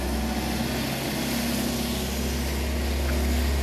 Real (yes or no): yes